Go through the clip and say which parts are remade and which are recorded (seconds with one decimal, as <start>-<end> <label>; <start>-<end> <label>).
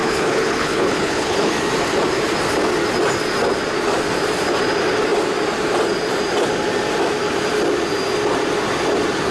0.0-1.5 remade; 1.5-9.3 recorded